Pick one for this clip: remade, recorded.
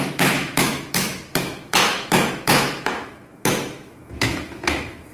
remade